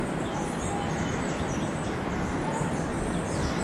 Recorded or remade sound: recorded